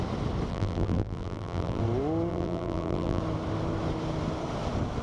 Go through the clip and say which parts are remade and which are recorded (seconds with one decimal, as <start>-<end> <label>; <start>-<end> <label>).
0.0-0.5 recorded; 0.5-1.8 remade; 1.8-2.3 recorded; 2.3-3.2 remade; 3.2-5.0 recorded